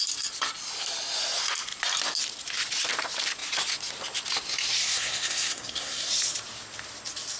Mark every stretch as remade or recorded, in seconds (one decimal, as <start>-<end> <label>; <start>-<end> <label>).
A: 0.0-4.8 recorded; 4.8-6.1 remade; 6.1-7.4 recorded